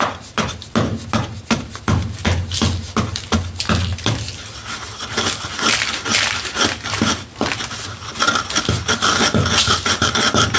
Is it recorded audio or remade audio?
recorded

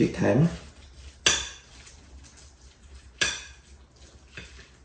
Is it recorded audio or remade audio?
recorded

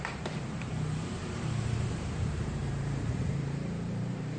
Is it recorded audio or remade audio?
remade